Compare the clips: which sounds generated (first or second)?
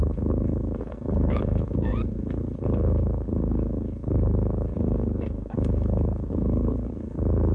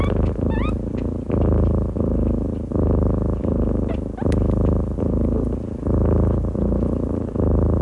first